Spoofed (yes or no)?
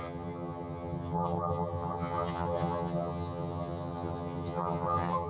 yes